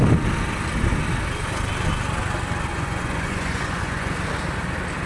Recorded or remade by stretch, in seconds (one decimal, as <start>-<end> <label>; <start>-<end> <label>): 0.0-2.7 recorded; 2.7-4.1 remade; 4.1-5.1 recorded